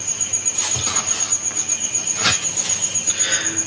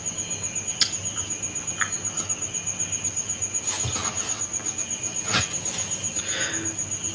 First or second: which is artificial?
first